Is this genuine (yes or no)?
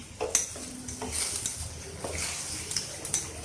yes